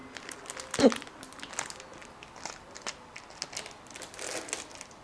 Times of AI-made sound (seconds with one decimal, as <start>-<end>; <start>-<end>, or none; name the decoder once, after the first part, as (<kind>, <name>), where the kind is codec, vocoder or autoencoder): none